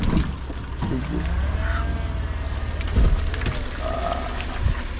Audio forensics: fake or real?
real